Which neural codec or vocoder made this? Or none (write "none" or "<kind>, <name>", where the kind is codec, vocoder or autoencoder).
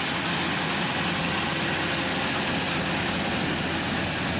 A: none